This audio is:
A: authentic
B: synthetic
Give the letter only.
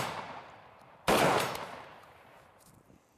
B